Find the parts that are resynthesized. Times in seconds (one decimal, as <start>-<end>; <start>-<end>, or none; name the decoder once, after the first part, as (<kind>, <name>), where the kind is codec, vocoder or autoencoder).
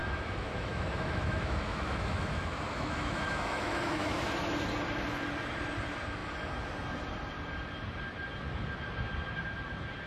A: 0.0-4.3 (autoencoder, DAC-VAE)